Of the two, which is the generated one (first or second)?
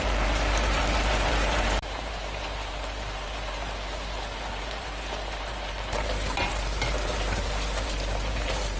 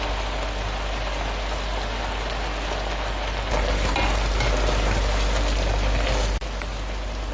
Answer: first